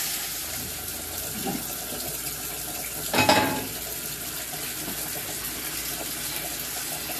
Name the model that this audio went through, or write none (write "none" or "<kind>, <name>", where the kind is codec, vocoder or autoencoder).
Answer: none